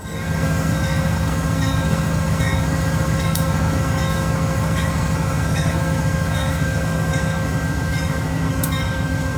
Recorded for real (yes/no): no